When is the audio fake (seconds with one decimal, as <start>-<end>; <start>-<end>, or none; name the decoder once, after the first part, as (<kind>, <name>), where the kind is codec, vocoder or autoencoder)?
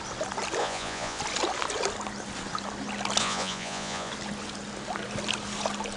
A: 0.6-1.2 (vocoder, Vocos); 3.2-4.1